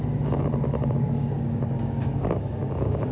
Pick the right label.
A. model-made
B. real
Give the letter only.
A